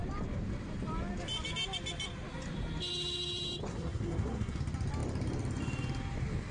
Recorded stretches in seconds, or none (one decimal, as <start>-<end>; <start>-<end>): 0.0-3.7; 4.6-6.5